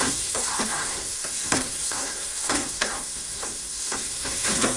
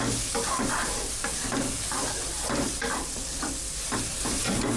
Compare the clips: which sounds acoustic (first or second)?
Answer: second